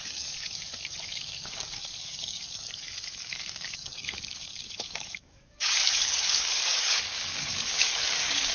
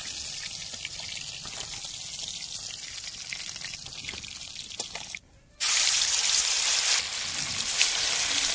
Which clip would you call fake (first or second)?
first